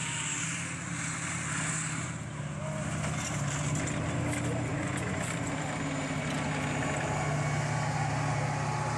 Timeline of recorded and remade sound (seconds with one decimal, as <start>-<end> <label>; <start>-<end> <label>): 0.0-4.7 recorded; 4.7-5.3 remade; 5.3-9.0 recorded